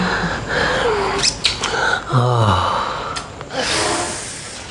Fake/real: real